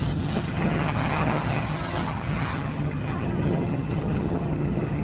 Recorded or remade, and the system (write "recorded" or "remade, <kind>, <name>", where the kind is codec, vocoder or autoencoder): remade, vocoder, HiFi-GAN